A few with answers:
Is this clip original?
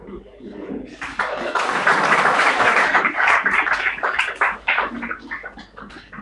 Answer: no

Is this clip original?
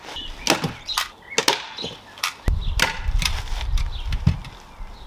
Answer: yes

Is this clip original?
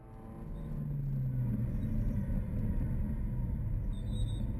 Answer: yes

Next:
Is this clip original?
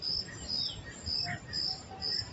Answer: yes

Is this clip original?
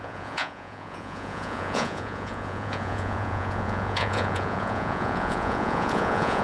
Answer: no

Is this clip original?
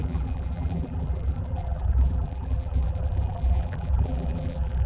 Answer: no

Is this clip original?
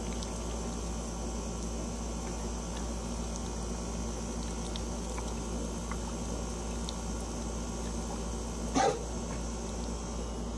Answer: yes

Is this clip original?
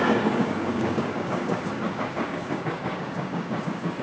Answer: no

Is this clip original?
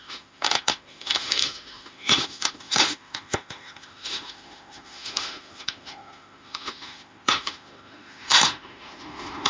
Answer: no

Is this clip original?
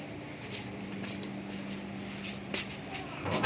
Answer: no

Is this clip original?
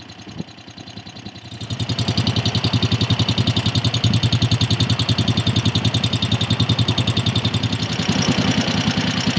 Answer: yes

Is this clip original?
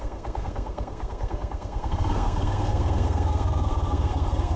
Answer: no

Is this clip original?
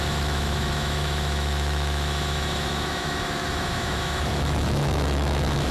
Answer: no